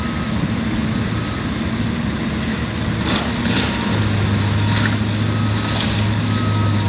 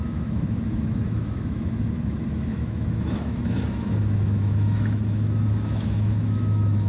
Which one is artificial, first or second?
second